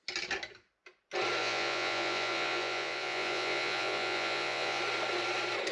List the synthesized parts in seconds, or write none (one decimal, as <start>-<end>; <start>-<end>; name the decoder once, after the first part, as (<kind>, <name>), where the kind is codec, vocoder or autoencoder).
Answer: 1.4-4.8 (vocoder, Vocos)